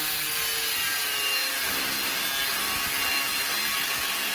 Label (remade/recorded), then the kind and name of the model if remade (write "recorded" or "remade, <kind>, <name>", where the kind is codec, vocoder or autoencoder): recorded